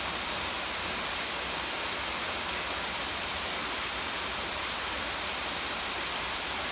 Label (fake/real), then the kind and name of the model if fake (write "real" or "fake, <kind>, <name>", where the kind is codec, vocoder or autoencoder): real